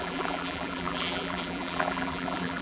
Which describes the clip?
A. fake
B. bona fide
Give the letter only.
A